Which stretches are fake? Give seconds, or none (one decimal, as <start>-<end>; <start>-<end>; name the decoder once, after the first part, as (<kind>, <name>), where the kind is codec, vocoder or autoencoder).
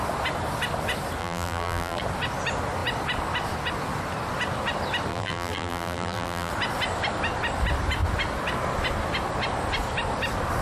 1.2-2.0 (vocoder, BigVGAN v2); 5.1-6.5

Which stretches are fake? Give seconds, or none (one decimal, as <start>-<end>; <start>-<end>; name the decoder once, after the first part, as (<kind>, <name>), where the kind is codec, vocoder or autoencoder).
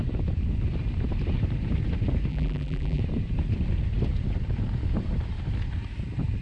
2.3-3.0 (vocoder, BigVGAN v2)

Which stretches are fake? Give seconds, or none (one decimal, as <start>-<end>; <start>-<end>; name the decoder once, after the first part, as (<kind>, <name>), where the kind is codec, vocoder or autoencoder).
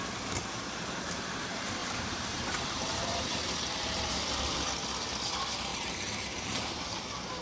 1.8-4.7 (vocoder, BigVGAN v2); 5.7-6.7